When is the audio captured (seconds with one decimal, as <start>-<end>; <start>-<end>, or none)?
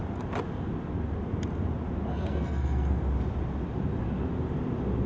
0.0-2.1; 3.0-5.1